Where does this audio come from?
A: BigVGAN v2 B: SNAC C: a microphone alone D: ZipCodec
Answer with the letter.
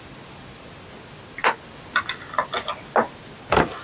C